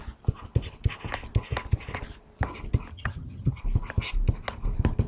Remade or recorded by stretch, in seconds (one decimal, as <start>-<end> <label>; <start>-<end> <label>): 0.0-2.9 recorded; 2.9-3.6 remade; 3.6-5.1 recorded